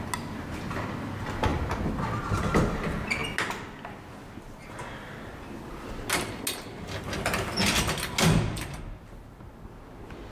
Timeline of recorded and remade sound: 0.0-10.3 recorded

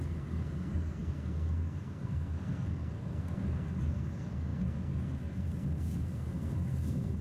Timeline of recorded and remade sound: 0.0-7.2 remade

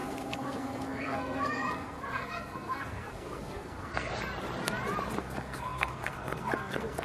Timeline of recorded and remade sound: 0.0-4.1 remade; 4.1-5.2 recorded; 5.2-7.0 remade

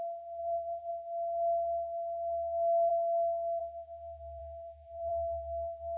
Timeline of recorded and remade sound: 0.0-0.4 recorded; 0.4-0.9 remade; 0.9-4.4 recorded; 4.4-5.1 remade; 5.1-6.0 recorded

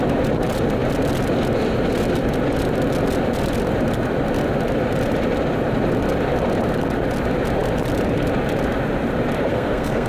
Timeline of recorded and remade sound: 0.0-9.5 recorded; 9.5-10.1 remade

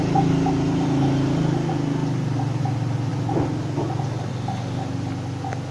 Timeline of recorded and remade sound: 0.0-5.7 recorded

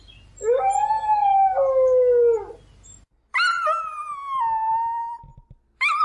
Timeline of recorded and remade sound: 0.0-6.0 recorded

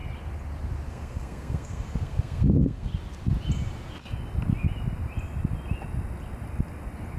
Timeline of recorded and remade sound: 0.0-0.9 recorded; 0.9-2.9 remade; 2.9-7.2 recorded